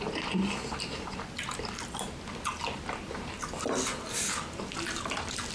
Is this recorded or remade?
remade